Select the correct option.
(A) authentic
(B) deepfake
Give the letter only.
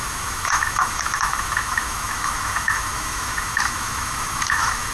B